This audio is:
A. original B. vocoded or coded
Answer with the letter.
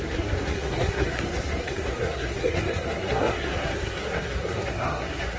B